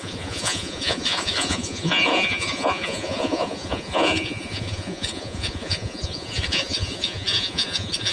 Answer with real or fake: fake